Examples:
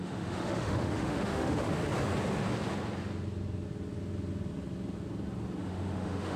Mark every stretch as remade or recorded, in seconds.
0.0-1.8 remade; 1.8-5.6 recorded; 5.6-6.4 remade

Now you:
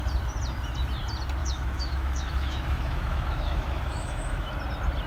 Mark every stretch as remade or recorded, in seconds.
0.0-1.4 recorded; 1.4-4.5 remade; 4.5-5.1 recorded

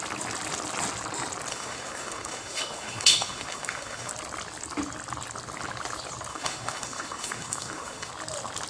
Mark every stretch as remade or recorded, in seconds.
0.0-1.5 recorded; 1.5-4.1 remade; 4.1-6.3 recorded; 6.3-8.1 remade; 8.1-8.7 recorded

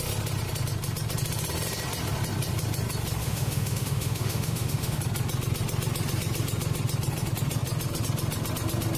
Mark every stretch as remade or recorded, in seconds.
0.0-3.2 recorded; 3.2-5.0 remade; 5.0-9.0 recorded

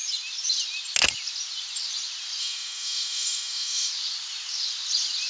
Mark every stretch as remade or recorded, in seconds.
0.0-2.4 recorded; 2.4-3.9 remade; 3.9-5.3 recorded

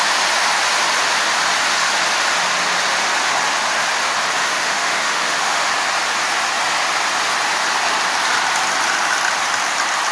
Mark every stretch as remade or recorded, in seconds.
0.0-4.4 recorded; 4.4-5.7 remade; 5.7-10.1 recorded

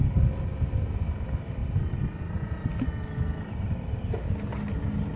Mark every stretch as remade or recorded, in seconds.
0.0-5.2 recorded

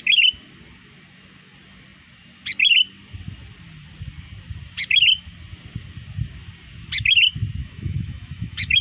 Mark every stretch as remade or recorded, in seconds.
0.0-7.6 recorded; 7.6-8.8 remade